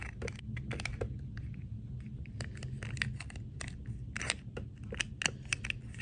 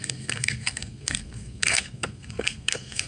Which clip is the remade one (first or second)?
second